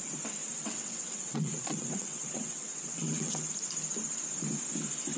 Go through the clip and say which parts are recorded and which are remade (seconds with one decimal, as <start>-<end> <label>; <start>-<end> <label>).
0.0-0.4 recorded; 0.4-3.5 remade; 3.5-5.2 recorded